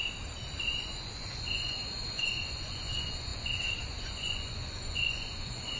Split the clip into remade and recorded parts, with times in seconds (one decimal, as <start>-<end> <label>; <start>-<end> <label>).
0.0-0.7 recorded; 0.7-5.8 remade